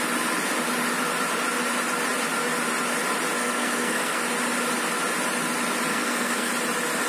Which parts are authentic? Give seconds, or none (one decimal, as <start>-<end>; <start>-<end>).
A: 0.0-3.4; 4.2-5.9; 6.5-7.1